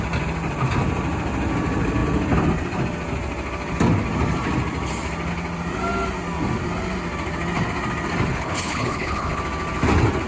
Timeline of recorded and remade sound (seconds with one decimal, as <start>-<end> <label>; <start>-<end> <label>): 0.0-8.3 recorded; 8.3-9.4 remade; 9.4-10.3 recorded